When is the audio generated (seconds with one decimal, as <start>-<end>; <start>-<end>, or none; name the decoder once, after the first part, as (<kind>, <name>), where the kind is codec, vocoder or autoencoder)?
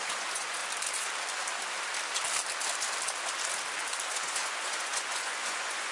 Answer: 0.0-0.6 (vocoder, Vocos); 4.1-5.9